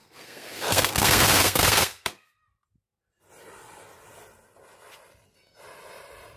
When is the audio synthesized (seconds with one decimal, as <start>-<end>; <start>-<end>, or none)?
0.0-2.3